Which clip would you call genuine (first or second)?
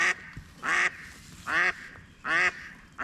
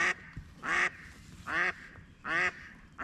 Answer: first